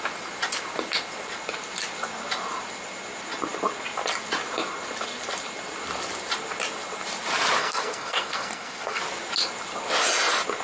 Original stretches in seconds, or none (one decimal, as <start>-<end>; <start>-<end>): 0.0-7.6; 9.0-10.6